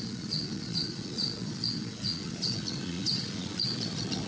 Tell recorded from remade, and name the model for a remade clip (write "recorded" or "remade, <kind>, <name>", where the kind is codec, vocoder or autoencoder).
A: remade, vocoder, Vocos